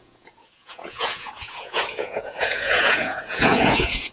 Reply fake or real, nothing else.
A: fake